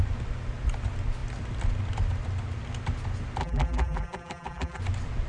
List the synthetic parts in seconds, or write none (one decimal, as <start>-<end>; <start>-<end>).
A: 3.4-4.8